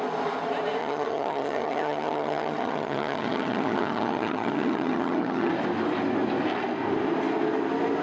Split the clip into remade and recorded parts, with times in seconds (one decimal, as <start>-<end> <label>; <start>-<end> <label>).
0.0-0.8 recorded; 0.8-5.5 remade; 5.5-8.0 recorded